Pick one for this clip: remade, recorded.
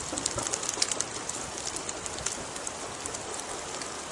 remade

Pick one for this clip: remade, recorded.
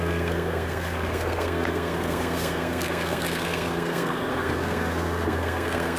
remade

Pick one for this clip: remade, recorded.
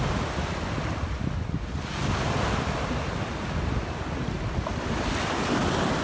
recorded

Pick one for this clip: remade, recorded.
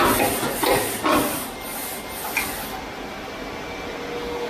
recorded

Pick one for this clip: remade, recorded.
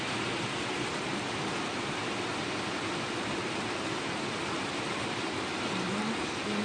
recorded